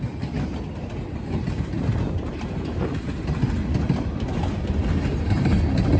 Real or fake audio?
real